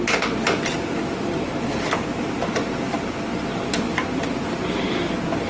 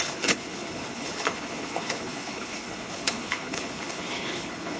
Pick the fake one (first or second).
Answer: second